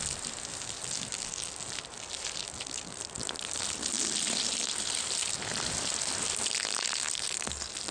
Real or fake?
real